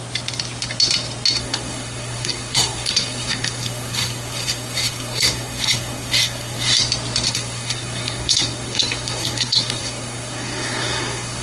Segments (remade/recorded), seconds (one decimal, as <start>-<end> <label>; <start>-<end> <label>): 0.0-1.4 recorded; 1.4-6.7 remade; 6.7-7.3 recorded; 7.3-11.4 remade